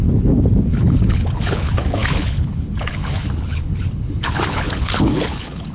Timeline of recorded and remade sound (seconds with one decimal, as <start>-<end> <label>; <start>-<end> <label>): 0.0-5.7 remade